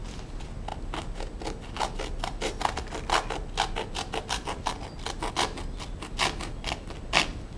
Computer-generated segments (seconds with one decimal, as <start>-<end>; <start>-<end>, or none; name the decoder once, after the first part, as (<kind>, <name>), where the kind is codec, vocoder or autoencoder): none